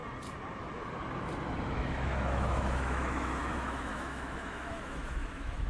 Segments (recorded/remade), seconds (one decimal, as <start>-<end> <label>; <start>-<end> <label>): 0.0-1.7 recorded; 1.7-5.7 remade